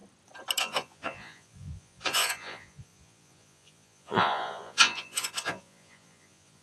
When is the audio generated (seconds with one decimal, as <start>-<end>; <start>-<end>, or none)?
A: 0.6-6.6